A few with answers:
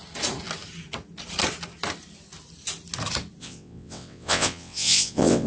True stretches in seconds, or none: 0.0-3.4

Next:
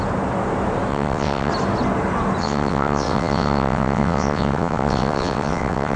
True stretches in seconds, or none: 0.0-0.9; 1.5-2.4